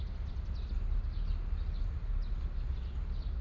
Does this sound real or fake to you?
real